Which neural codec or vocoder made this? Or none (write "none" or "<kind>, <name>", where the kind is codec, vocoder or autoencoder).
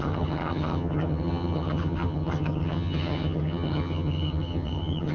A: vocoder, HiFi-GAN